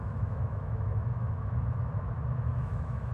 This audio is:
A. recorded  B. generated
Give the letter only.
B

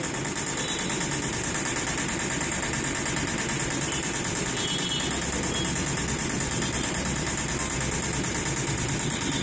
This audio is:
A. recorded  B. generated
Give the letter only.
A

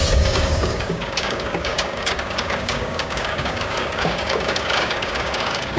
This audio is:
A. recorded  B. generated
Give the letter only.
B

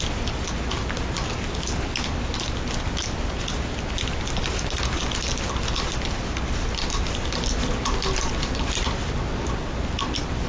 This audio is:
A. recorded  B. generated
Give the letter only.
A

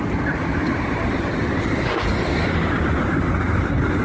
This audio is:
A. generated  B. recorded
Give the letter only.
A